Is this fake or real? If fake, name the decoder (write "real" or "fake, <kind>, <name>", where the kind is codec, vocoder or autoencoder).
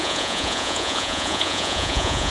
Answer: fake, vocoder, Vocos